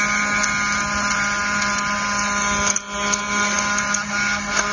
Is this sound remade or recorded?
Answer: recorded